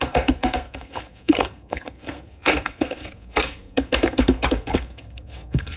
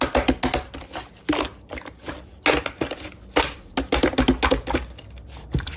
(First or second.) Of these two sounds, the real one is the second